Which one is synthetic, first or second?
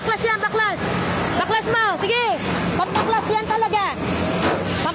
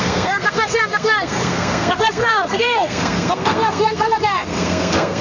second